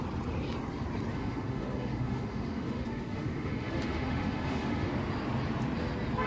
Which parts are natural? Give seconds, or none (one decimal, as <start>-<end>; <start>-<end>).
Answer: 0.0-1.1; 4.9-6.3